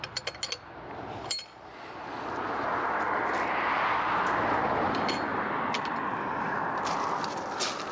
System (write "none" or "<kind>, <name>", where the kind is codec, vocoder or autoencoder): none